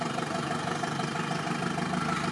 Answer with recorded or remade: recorded